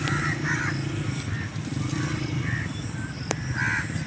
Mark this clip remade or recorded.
recorded